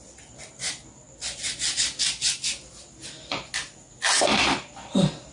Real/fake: real